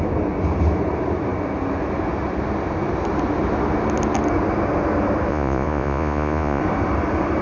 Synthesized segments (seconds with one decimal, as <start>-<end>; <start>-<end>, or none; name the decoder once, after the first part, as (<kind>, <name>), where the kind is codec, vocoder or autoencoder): 5.3-6.6 (vocoder, Vocos)